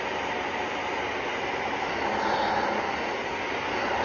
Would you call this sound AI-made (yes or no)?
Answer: no